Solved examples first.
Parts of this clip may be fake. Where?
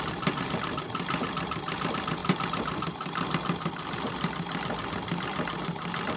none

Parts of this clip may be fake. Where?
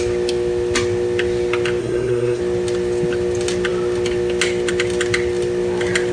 1.8-2.4 (codec, SNAC)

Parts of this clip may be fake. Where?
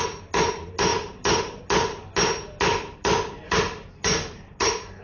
none